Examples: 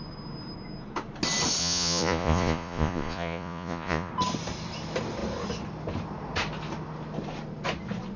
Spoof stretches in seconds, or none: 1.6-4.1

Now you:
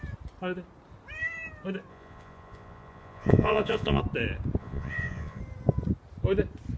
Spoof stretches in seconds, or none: 1.9-4.0; 4.6-5.4

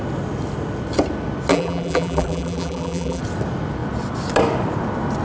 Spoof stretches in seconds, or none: 1.5-3.2

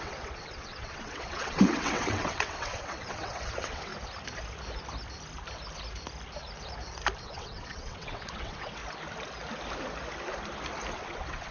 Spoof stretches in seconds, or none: 0.0-3.9; 7.2-8.8; 10.9-11.5

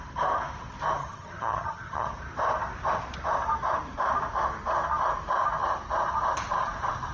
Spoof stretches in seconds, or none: 1.0-2.1

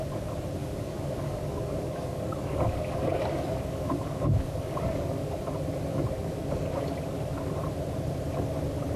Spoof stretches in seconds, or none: 0.6-5.4; 5.9-6.8

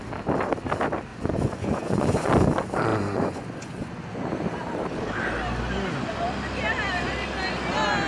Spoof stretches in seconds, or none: 1.1-2.3; 2.9-4.3

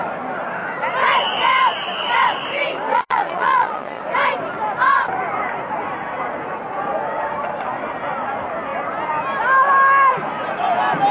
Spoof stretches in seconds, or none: 2.9-4.0